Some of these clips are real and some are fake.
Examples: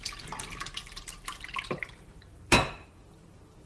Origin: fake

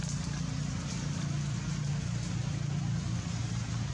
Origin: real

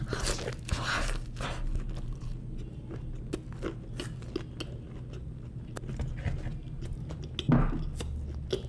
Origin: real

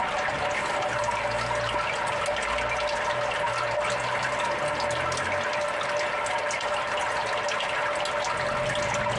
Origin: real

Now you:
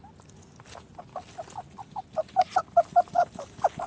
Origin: real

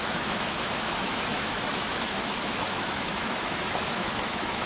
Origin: fake